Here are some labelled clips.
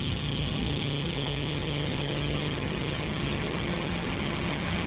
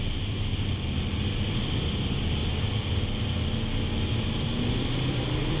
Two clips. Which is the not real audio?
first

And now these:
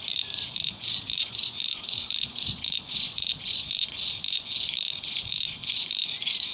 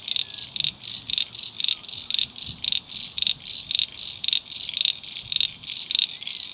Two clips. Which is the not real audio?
first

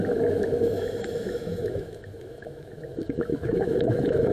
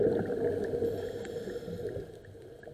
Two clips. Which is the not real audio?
first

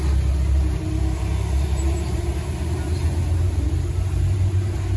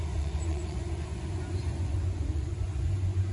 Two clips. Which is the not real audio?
second